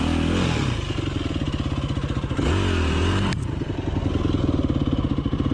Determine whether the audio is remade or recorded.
recorded